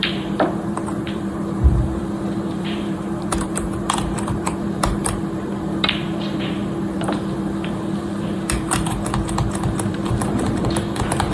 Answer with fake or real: fake